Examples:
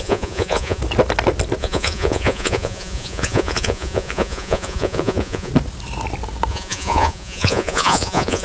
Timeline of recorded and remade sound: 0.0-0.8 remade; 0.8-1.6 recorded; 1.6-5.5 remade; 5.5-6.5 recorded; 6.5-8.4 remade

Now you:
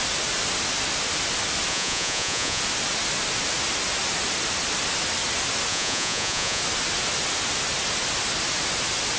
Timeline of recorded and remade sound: 0.0-1.7 recorded; 1.7-2.6 remade; 2.6-5.7 recorded; 5.7-6.6 remade; 6.6-9.2 recorded

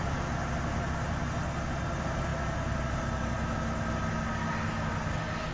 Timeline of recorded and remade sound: 0.0-5.5 recorded

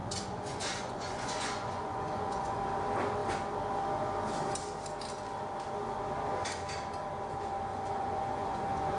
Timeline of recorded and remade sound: 0.0-2.6 remade; 2.6-7.7 recorded; 7.7-9.0 remade

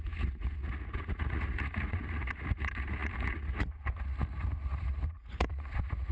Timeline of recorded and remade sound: 0.0-6.1 remade